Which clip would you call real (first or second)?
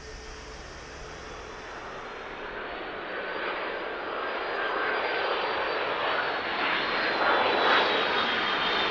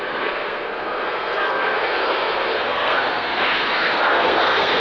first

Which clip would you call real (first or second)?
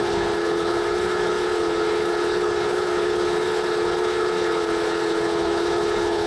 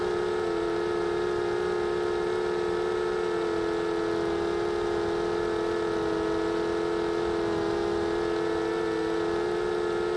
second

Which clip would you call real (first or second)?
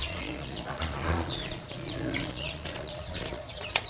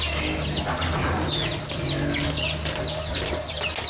second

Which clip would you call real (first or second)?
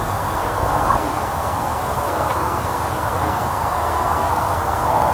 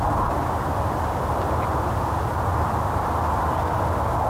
second